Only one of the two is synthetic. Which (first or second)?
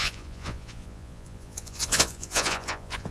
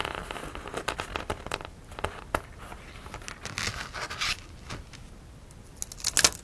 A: first